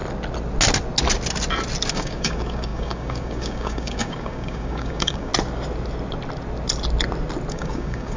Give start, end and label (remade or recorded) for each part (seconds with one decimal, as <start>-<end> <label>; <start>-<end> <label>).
0.0-1.9 recorded; 1.9-5.3 remade; 5.3-7.5 recorded; 7.5-8.2 remade